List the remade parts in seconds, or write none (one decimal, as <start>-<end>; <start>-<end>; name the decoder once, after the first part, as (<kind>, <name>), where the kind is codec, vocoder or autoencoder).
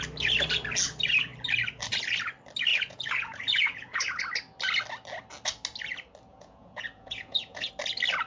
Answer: 2.7-4.2 (vocoder, Vocos); 6.3-7.7